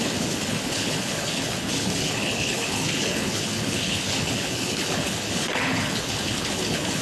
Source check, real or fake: fake